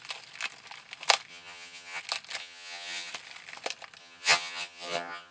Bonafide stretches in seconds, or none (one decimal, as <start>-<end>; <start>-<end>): 0.0-1.3; 2.0-2.4; 3.1-4.0